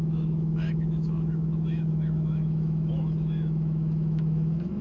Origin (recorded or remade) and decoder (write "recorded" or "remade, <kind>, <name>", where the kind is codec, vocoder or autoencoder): remade, autoencoder, DAC-VAE